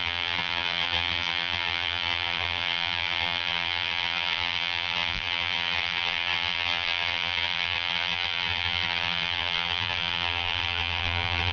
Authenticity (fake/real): fake